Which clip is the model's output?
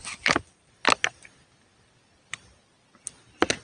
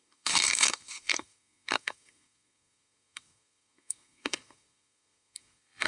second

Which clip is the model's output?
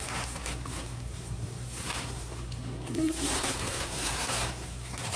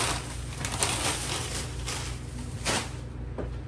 first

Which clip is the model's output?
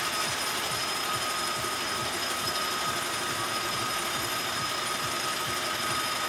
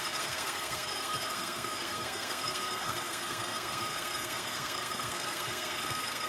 second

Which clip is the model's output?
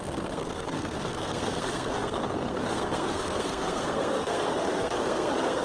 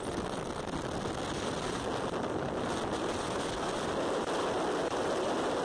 first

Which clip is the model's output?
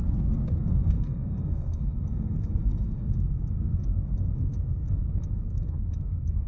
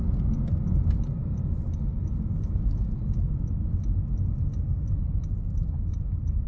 first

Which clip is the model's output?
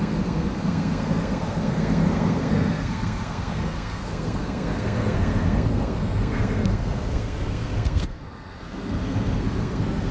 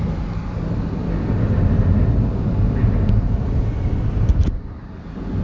first